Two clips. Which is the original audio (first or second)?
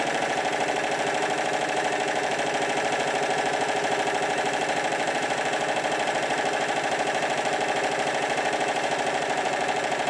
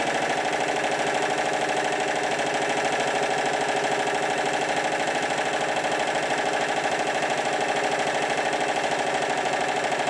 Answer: second